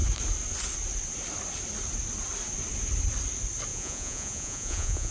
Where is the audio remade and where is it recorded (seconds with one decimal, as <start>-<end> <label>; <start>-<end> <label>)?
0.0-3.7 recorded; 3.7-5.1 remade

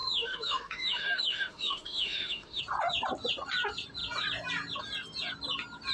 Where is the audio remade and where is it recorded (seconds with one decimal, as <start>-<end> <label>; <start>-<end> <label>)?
0.0-2.6 remade; 2.6-5.9 recorded

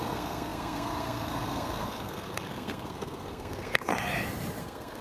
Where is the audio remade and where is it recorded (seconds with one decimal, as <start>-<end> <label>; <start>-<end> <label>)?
0.0-3.9 remade; 3.9-4.6 recorded; 4.6-5.0 remade

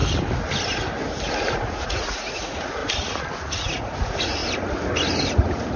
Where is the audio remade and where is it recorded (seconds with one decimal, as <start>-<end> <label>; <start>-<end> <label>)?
0.0-1.5 recorded; 1.5-2.8 remade; 2.8-3.6 recorded; 3.6-4.4 remade; 4.4-5.3 recorded; 5.3-5.8 remade

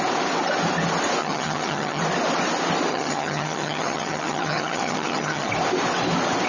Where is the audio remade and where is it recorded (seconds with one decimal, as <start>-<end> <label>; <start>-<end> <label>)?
0.0-1.2 recorded; 1.2-2.0 remade; 2.0-2.9 recorded; 2.9-5.5 remade; 5.5-6.5 recorded

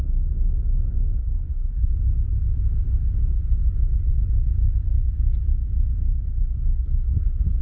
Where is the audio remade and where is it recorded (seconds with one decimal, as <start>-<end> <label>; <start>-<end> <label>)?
0.0-1.2 recorded; 1.2-1.9 remade; 1.9-6.3 recorded; 6.3-7.6 remade